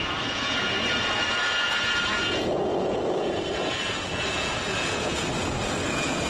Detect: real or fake fake